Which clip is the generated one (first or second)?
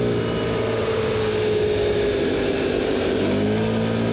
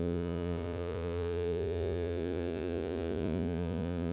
second